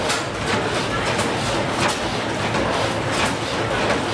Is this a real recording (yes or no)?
yes